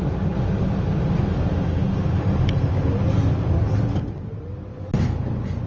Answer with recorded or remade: recorded